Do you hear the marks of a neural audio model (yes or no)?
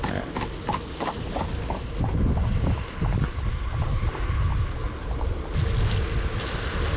no